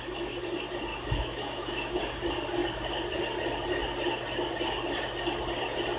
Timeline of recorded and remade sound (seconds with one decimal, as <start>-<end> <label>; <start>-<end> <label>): 0.0-0.9 recorded; 0.9-2.0 remade; 2.0-6.0 recorded